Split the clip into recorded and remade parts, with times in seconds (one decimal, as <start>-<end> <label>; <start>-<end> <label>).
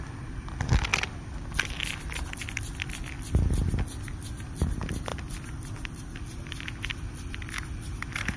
0.0-8.4 recorded